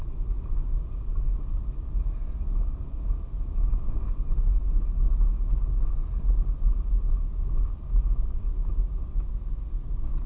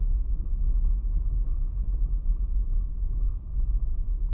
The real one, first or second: first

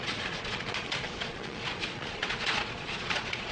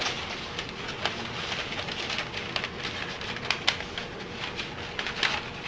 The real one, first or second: second